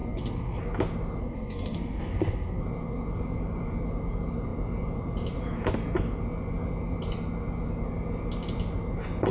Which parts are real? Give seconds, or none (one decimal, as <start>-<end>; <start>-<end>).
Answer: 0.6-1.2; 2.6-9.3